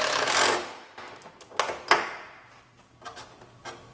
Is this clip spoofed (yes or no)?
no